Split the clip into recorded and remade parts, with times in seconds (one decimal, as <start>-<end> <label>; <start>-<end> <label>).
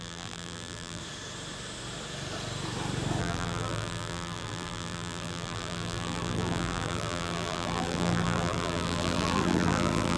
0.0-1.0 remade; 1.0-3.2 recorded; 3.2-10.2 remade